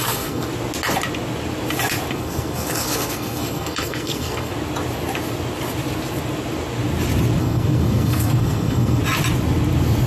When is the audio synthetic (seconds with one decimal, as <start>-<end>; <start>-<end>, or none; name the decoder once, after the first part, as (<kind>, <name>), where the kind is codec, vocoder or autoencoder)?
0.0-0.5 (codec, SNAC); 2.1-4.5; 7.4-9.0